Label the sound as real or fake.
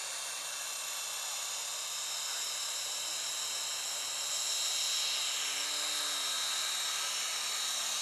real